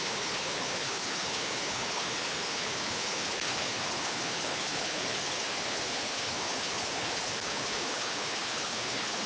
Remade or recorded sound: remade